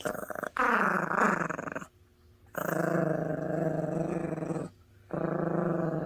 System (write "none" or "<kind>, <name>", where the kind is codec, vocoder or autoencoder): none